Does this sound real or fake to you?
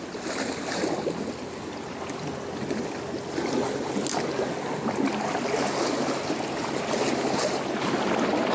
real